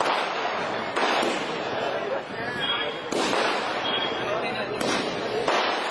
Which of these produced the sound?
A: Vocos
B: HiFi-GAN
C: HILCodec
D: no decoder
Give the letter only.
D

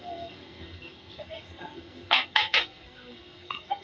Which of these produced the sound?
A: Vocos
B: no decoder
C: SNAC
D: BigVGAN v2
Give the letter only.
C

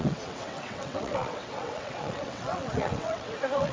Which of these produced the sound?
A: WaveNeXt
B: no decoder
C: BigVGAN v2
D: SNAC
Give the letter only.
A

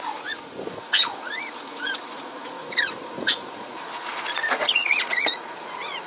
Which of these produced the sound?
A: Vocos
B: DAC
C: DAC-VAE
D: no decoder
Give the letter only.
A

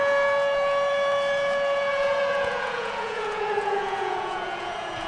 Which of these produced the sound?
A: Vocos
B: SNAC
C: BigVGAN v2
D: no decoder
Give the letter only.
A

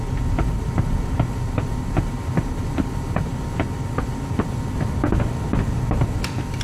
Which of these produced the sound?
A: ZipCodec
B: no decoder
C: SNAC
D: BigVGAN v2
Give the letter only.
B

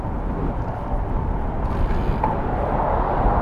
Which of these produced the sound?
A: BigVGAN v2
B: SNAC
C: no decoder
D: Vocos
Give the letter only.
C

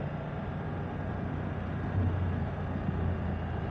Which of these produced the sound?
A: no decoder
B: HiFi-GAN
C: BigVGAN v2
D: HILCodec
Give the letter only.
A